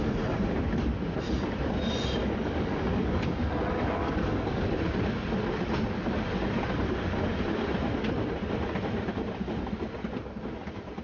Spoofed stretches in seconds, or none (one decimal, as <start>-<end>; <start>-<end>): 2.2-4.7